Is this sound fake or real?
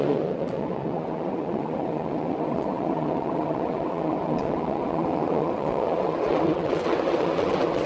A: fake